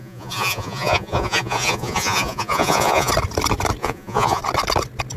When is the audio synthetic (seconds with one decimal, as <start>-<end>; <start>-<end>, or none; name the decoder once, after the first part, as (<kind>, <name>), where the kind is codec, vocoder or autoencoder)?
0.0-3.1 (vocoder, Vocos); 3.8-4.4